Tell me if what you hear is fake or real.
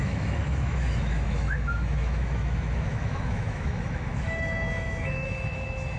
fake